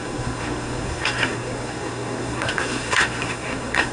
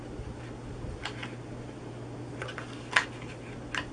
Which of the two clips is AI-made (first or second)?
first